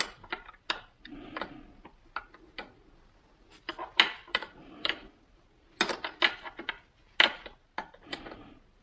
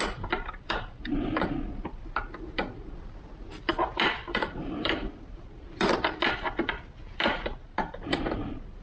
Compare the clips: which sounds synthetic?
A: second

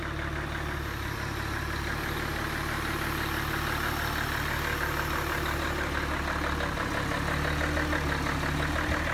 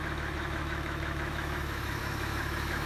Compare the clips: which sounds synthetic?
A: second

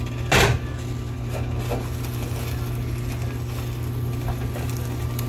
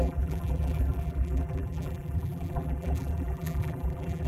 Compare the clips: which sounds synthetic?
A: second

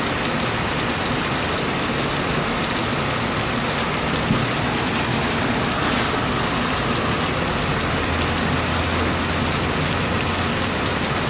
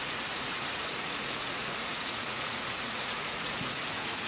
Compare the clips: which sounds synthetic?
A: second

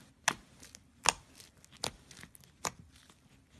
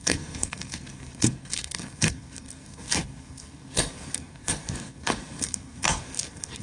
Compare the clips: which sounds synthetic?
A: second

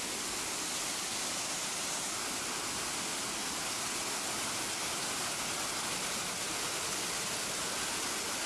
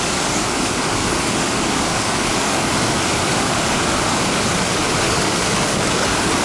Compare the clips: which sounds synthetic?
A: second